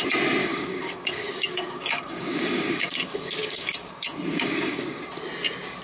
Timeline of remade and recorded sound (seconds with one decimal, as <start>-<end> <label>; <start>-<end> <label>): 0.0-0.4 recorded; 0.4-3.9 remade; 3.9-4.3 recorded; 4.3-5.0 remade; 5.0-5.8 recorded